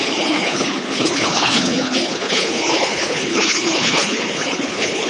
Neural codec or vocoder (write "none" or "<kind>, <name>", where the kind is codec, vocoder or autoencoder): codec, HILCodec